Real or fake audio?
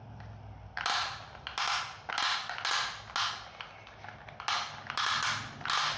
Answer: real